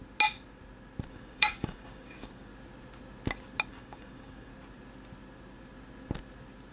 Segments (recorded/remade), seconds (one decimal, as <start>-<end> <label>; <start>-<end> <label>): 0.0-1.1 recorded; 1.1-2.5 remade; 2.5-3.7 recorded; 3.7-4.5 remade; 4.5-6.7 recorded